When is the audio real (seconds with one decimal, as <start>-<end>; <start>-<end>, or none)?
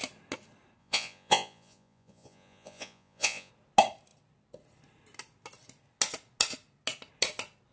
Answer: 0.0-0.8; 3.5-7.7